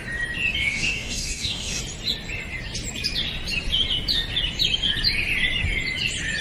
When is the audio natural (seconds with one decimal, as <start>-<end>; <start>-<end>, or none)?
0.0-0.6; 1.8-6.4